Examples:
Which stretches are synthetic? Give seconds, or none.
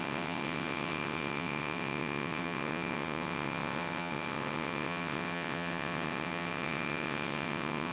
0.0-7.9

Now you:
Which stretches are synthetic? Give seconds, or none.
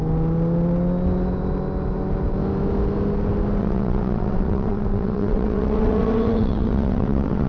3.6-7.5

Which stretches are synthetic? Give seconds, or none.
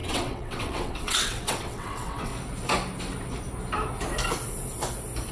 0.0-2.3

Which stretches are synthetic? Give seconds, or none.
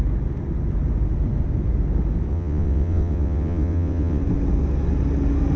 2.3-4.2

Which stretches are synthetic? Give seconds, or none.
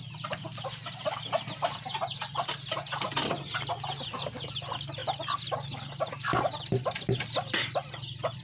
none